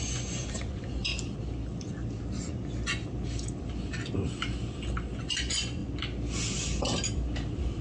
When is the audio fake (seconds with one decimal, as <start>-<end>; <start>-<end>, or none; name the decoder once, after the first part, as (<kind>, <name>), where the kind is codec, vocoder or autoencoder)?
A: 0.0-1.1 (vocoder, Vocos); 5.2-5.8